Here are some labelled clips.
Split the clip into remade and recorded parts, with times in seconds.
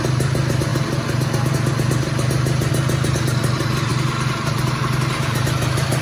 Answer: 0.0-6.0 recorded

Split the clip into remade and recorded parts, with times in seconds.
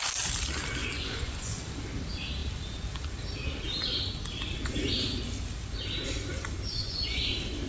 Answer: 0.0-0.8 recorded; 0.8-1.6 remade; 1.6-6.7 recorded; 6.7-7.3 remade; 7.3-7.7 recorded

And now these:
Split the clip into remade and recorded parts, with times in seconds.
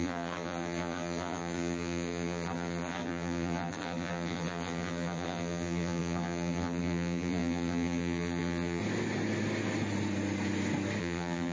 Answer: 0.0-8.8 remade; 8.8-11.0 recorded; 11.0-11.5 remade